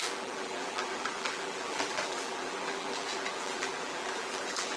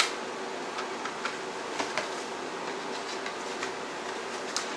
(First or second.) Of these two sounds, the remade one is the first